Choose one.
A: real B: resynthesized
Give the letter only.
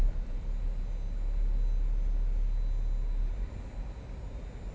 A